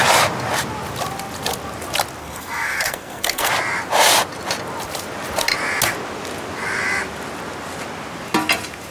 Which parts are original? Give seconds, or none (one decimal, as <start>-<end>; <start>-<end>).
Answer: 0.0-2.2; 3.5-8.9